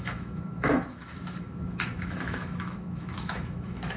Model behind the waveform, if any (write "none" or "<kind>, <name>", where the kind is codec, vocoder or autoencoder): autoencoder, DAC-VAE